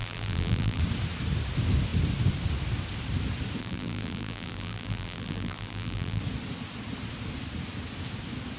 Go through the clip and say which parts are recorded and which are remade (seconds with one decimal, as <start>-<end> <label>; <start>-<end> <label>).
0.0-0.8 remade; 0.8-3.6 recorded; 3.6-6.2 remade; 6.2-8.6 recorded